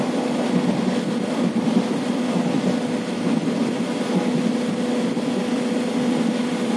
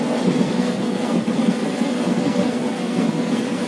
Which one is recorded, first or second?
first